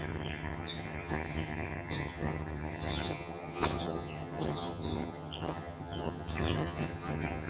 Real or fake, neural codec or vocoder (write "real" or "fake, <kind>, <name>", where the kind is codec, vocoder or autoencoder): fake, vocoder, HiFi-GAN